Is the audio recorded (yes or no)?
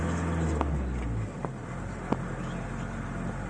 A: yes